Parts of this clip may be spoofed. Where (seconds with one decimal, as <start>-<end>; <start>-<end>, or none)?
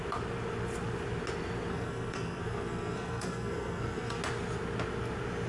1.7-4.2